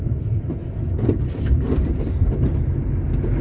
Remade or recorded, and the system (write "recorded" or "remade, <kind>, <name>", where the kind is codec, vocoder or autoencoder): remade, vocoder, BigVGAN v2